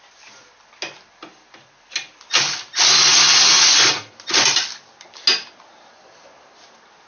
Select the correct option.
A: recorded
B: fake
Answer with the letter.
A